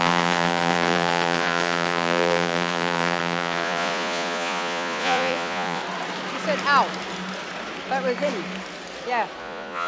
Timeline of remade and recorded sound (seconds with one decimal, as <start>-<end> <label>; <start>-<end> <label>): 0.0-5.8 remade; 5.8-9.4 recorded; 9.4-9.9 remade